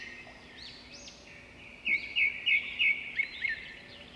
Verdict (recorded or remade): recorded